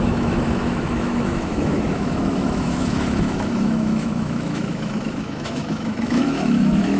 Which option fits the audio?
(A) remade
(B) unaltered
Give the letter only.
A